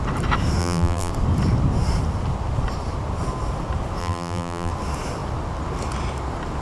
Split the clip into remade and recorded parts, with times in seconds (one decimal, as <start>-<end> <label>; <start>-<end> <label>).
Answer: 0.0-0.6 recorded; 0.6-1.1 remade; 1.1-4.0 recorded; 4.0-4.7 remade; 4.7-6.6 recorded